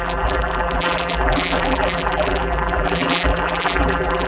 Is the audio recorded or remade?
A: remade